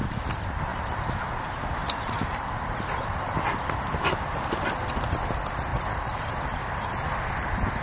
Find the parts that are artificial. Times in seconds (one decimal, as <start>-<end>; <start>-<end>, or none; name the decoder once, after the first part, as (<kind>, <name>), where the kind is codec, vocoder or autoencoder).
0.7-1.4 (vocoder, BigVGAN v2); 1.8-3.4; 5.7-7.8

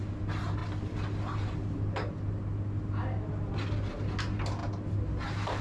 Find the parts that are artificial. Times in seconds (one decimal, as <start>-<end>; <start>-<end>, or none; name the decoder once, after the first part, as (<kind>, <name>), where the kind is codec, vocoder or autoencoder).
none